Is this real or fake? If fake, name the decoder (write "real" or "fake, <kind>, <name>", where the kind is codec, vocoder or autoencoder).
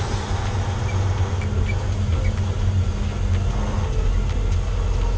real